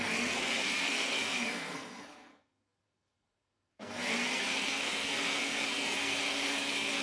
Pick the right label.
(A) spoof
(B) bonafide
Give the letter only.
A